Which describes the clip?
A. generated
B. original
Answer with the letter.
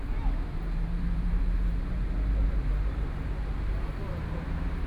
A